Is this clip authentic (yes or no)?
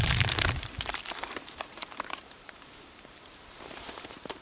no